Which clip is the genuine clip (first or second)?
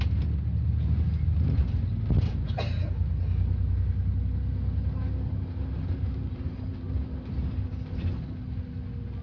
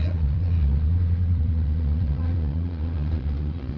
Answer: first